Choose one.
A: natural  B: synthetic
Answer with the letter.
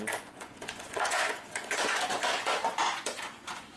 B